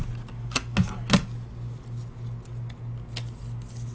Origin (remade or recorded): recorded